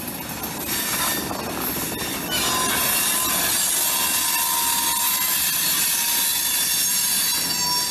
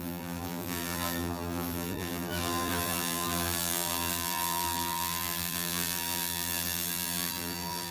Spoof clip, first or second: second